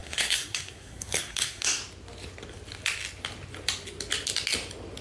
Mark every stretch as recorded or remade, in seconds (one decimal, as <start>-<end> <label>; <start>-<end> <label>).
0.0-1.8 remade; 1.8-5.0 recorded